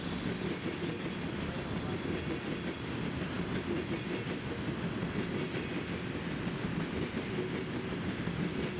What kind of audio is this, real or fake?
real